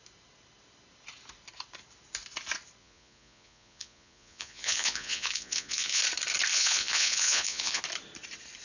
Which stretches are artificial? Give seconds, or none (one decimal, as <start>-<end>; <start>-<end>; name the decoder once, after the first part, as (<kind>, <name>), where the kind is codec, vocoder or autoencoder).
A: 2.8-6.0 (vocoder, Vocos); 6.5-7.8